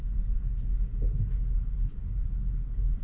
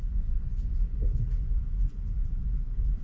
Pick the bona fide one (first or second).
first